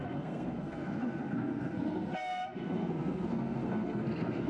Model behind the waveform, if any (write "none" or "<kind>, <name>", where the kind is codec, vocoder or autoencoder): codec, SNAC